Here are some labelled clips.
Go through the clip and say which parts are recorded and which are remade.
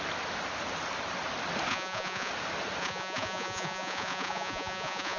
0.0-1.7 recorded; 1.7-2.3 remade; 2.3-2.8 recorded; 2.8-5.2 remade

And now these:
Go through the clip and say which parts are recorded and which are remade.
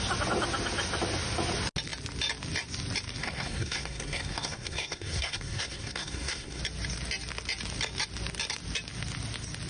0.0-3.2 recorded; 3.2-6.6 remade; 6.6-9.7 recorded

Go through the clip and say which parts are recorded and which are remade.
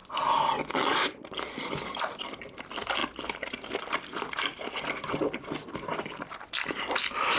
0.0-0.7 recorded; 0.7-3.0 remade; 3.0-5.9 recorded; 5.9-7.4 remade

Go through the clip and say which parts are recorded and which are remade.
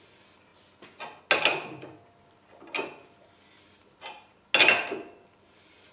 0.0-5.9 recorded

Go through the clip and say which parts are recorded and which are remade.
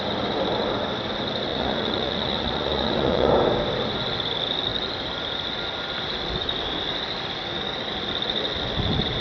0.0-1.5 recorded; 1.5-3.3 remade; 3.3-9.2 recorded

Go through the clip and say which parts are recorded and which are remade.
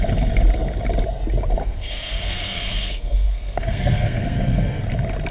0.0-1.6 recorded; 1.6-4.8 remade; 4.8-5.3 recorded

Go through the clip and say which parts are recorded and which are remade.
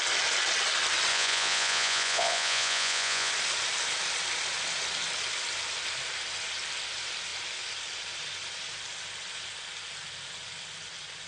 0.0-1.1 recorded; 1.1-3.3 remade; 3.3-11.3 recorded